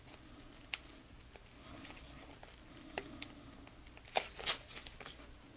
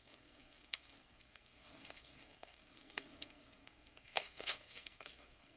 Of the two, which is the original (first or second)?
first